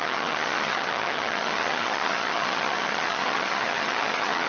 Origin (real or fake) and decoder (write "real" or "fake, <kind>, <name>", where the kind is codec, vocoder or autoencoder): fake, vocoder, HiFi-GAN